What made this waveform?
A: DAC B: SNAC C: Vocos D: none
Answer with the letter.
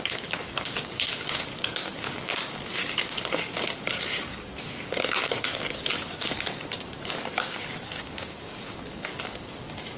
A